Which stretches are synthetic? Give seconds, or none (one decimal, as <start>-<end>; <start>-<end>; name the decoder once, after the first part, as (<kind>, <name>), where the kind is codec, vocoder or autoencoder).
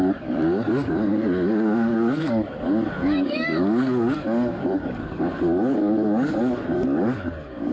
0.0-7.7 (codec, DAC)